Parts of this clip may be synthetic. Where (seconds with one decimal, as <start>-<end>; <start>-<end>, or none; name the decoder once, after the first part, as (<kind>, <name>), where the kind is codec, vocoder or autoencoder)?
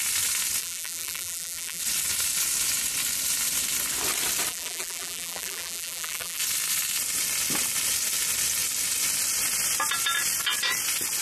0.6-1.8 (vocoder, BigVGAN v2); 4.5-6.4